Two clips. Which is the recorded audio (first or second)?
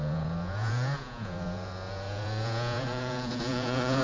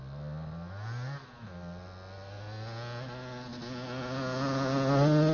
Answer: second